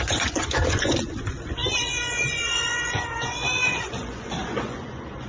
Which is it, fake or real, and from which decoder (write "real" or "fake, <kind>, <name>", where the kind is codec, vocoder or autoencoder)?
fake, vocoder, Vocos